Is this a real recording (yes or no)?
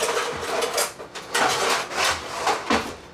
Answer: yes